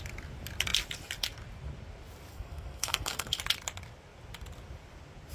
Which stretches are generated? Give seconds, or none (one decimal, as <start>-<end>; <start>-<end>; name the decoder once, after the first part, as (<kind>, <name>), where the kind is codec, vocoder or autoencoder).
2.3-3.4 (codec, SNAC)